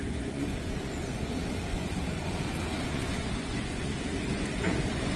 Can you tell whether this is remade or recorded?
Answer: remade